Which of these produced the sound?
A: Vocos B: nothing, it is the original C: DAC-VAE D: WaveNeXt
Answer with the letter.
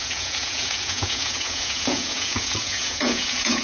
A